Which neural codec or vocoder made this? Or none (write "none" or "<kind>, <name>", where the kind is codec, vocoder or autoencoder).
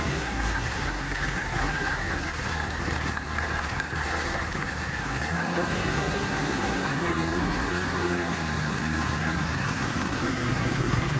codec, SNAC